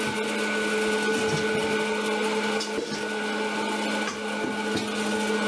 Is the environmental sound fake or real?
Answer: real